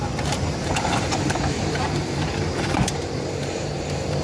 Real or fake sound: fake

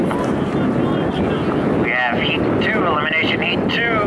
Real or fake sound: real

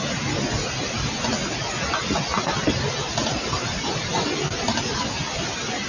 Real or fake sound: real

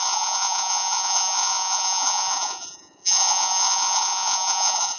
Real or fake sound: fake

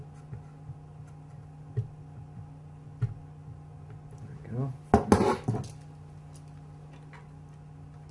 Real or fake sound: real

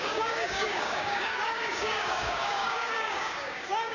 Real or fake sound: fake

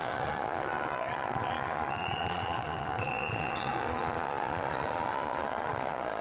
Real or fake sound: fake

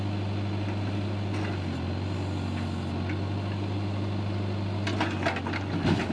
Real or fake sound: real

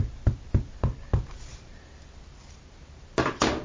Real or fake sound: real